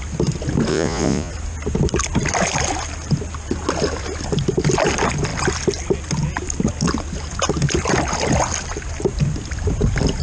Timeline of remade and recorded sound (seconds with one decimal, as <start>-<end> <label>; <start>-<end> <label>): 0.0-0.7 recorded; 0.7-1.3 remade; 1.3-10.2 recorded